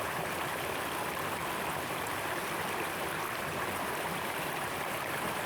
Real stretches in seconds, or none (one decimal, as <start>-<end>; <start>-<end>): 1.4-3.7